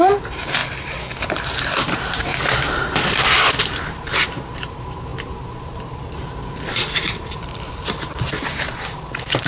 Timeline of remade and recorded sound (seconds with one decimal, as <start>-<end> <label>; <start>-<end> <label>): 0.0-0.6 remade; 0.6-1.2 recorded; 1.2-2.3 remade; 2.3-3.6 recorded; 3.6-9.5 remade

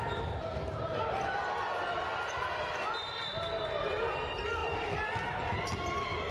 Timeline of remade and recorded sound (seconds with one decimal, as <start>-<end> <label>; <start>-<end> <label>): 0.0-6.3 recorded